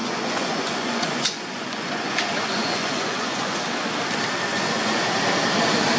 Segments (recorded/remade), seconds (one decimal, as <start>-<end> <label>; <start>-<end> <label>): 0.0-3.6 remade; 3.6-4.5 recorded; 4.5-5.0 remade; 5.0-6.0 recorded